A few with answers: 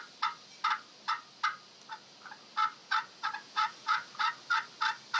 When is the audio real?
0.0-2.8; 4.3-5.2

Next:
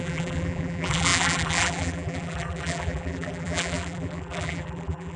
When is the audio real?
none

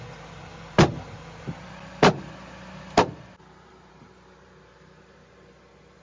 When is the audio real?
0.0-6.0

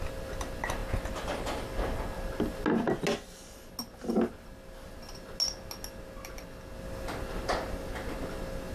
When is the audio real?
0.0-8.7

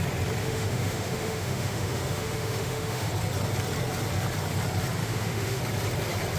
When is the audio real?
0.0-0.4; 3.1-5.0; 5.6-6.4

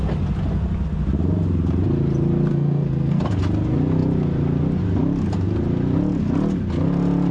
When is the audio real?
0.0-2.5; 3.2-7.3

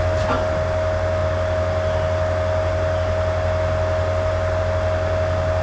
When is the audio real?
0.0-5.6

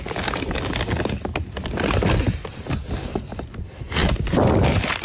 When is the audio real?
0.0-5.0